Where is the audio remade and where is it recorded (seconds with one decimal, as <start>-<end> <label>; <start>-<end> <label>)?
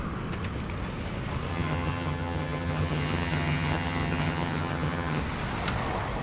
0.0-1.5 recorded; 1.5-5.2 remade; 5.2-6.2 recorded